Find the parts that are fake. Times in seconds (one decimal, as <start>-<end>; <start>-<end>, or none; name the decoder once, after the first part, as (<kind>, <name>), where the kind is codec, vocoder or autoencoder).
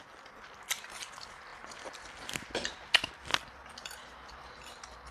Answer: 3.8-4.6 (vocoder, BigVGAN v2)